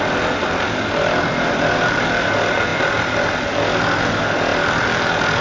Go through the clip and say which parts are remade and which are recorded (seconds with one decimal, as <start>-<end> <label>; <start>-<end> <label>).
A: 0.0-5.4 recorded